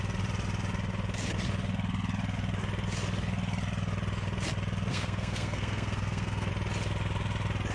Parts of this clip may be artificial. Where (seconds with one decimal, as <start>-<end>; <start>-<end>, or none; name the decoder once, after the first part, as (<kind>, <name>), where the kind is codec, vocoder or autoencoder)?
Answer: 4.9-6.5 (codec, SNAC)